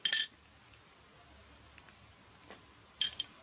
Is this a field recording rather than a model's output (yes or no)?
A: yes